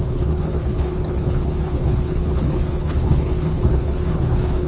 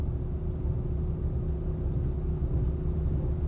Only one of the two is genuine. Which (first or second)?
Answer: second